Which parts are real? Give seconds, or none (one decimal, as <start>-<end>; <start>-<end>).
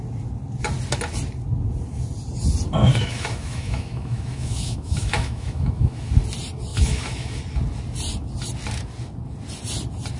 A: 0.0-2.8; 6.1-6.7; 7.4-10.2